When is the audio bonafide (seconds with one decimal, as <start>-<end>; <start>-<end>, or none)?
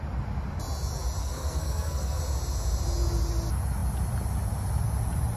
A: 0.0-1.2; 2.2-5.4